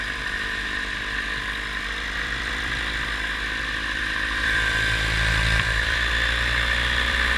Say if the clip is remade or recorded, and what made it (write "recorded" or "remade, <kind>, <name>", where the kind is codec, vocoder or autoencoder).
remade, vocoder, BigVGAN v2